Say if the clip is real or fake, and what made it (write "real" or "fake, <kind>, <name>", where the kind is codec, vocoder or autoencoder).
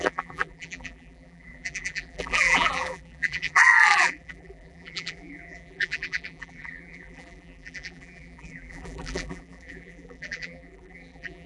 fake, vocoder, BigVGAN v2